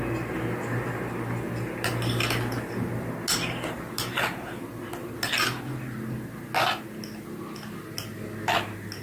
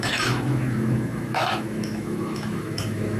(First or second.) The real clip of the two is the first